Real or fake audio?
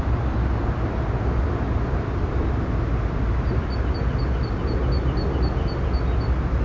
real